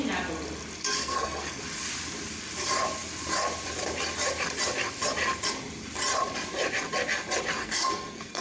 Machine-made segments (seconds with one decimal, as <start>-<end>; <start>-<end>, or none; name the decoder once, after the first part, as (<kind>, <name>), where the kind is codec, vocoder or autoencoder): 0.9-1.6 (codec, SNAC); 7.6-8.4